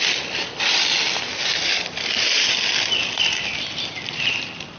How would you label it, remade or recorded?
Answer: recorded